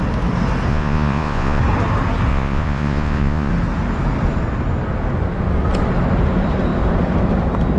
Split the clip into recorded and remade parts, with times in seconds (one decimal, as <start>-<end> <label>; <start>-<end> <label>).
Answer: 0.0-0.7 recorded; 0.7-1.6 remade; 1.6-2.3 recorded; 2.3-3.5 remade; 3.5-7.8 recorded